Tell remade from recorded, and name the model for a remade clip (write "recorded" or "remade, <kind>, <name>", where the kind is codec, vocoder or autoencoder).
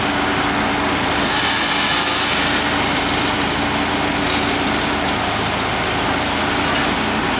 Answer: recorded